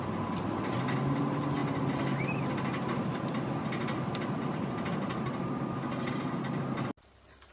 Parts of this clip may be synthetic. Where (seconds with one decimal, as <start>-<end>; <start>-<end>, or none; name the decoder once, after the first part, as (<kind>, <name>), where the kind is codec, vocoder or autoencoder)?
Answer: none

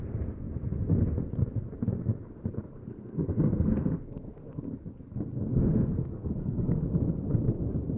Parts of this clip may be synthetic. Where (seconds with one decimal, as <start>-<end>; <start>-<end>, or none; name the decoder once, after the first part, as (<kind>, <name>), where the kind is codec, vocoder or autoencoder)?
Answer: 2.8-4.6 (codec, SNAC); 5.5-6.8

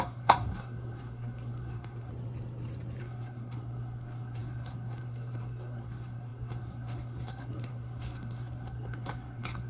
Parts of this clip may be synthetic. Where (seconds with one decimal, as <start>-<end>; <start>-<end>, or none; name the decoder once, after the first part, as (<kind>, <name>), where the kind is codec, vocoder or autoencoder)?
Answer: 0.0-2.1 (codec, SNAC); 3.0-9.7

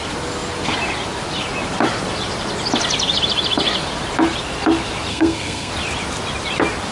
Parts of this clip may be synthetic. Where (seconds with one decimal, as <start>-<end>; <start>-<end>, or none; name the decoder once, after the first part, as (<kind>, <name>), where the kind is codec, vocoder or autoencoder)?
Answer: 5.1-5.7 (codec, SNAC)

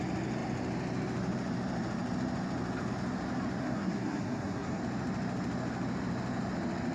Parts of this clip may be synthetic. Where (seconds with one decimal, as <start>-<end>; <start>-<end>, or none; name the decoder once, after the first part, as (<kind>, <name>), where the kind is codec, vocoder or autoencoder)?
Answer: 3.6-4.8 (codec, SNAC)

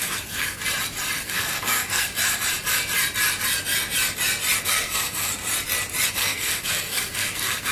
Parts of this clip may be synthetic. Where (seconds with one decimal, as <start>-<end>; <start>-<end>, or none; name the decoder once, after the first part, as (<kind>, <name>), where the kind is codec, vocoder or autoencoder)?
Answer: 0.0-0.6 (codec, SNAC); 1.2-2.1; 4.6-5.3; 6.1-7.7

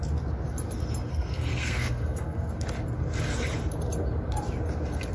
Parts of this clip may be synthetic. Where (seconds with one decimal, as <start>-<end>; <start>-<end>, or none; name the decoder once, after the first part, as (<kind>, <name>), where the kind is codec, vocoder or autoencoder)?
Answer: 1.1-2.5 (codec, SNAC)